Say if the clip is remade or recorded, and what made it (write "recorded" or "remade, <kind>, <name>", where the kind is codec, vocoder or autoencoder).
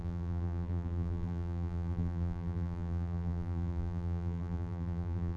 remade, vocoder, BigVGAN v2